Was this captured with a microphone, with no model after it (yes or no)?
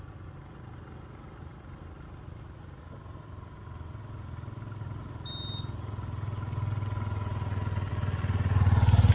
yes